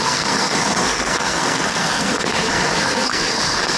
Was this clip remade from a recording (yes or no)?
yes